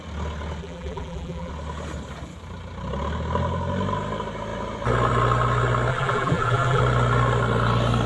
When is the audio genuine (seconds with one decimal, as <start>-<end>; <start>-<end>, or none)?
0.0-0.6; 1.5-5.9; 6.8-8.1